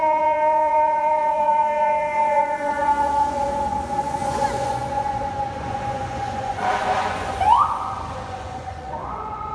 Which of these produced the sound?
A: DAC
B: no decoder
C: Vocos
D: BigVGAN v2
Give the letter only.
C